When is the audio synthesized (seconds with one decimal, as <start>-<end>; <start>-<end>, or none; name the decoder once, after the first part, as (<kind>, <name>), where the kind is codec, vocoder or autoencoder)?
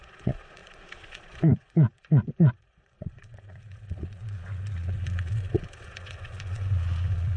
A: 0.0-7.4 (vocoder, Vocos)